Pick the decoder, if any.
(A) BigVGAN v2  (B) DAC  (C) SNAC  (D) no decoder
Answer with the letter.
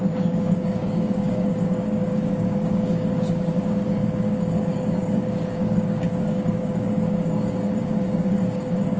B